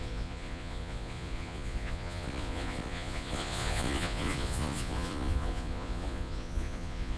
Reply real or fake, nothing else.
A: fake